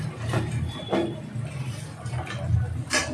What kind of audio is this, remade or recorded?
recorded